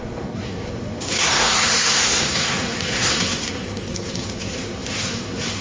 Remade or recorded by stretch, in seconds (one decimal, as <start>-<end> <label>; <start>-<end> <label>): 0.0-5.6 remade